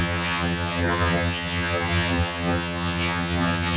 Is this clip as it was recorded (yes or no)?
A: no